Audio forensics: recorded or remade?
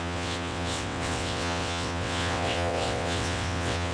remade